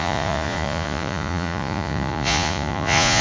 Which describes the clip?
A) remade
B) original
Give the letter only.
A